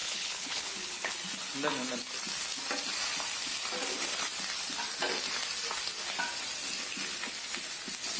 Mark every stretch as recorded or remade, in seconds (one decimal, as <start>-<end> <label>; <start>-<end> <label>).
0.0-1.1 remade; 1.1-8.2 recorded